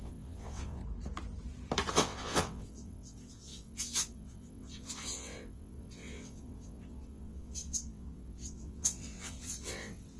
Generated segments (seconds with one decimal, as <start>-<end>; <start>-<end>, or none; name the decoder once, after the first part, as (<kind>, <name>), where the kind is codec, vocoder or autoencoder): 0.0-0.8 (vocoder, WaveNeXt); 1.9-10.2